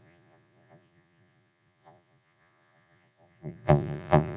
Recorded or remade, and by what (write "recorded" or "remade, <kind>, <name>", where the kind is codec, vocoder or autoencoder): remade, vocoder, Vocos